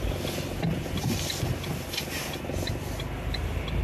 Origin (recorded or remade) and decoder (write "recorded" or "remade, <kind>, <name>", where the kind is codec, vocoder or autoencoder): recorded